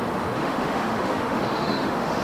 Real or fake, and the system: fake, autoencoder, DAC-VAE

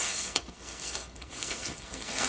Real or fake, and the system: fake, codec, SNAC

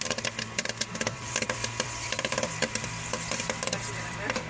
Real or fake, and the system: fake, vocoder, BigVGAN v2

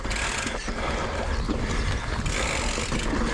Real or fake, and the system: real